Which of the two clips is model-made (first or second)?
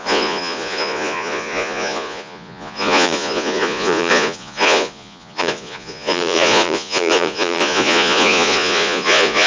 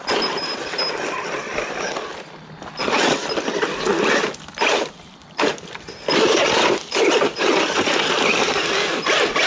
first